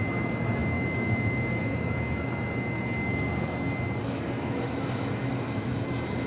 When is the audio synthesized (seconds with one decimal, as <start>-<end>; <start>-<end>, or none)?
0.0-3.3; 4.0-6.3